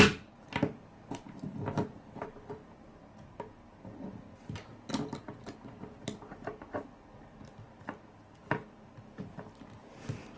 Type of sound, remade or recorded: recorded